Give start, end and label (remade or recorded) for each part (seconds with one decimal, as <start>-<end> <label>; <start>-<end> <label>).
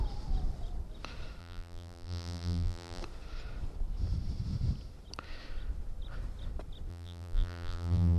0.0-1.4 recorded; 1.4-3.0 remade; 3.0-6.9 recorded; 6.9-8.2 remade